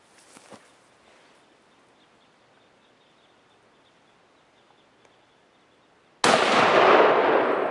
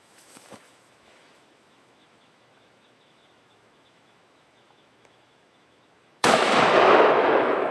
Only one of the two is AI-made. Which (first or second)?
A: second